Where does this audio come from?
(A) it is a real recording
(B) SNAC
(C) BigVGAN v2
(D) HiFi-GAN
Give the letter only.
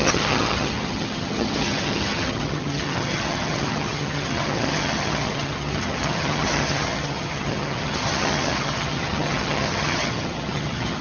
D